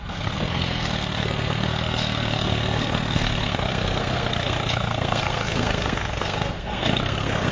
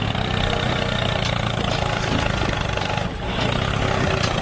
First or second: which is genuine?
second